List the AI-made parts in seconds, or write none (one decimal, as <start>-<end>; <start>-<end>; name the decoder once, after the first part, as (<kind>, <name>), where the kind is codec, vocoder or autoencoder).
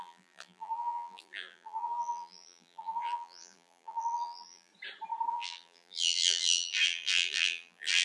0.0-4.7 (vocoder, BigVGAN v2); 5.3-8.0